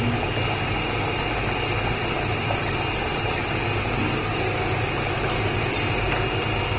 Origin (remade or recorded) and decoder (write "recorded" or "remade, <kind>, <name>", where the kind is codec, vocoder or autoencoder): recorded